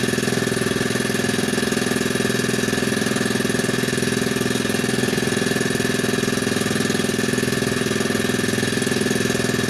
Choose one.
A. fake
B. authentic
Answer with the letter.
B